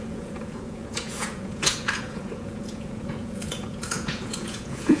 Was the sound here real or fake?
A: fake